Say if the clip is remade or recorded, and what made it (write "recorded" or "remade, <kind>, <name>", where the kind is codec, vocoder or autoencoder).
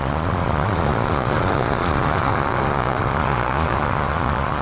remade, vocoder, Vocos